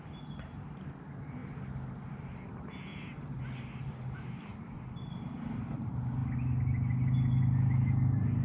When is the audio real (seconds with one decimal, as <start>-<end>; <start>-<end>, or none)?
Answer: 0.0-8.4